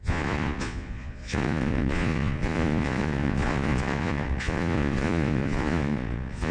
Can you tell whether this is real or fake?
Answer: fake